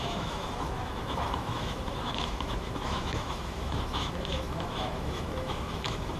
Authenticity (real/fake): fake